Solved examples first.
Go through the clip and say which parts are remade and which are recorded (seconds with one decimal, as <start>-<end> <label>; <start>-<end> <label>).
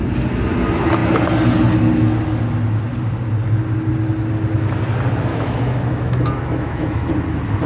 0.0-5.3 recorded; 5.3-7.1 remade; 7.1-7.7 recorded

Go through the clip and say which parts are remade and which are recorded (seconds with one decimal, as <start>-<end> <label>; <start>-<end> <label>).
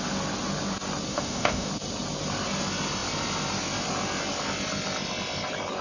0.0-1.1 recorded; 1.1-1.7 remade; 1.7-5.8 recorded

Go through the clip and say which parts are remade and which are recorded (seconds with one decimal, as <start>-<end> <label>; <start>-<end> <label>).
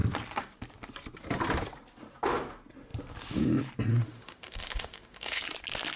0.0-3.9 recorded; 3.9-5.4 remade; 5.4-6.0 recorded